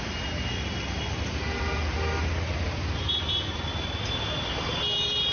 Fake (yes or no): no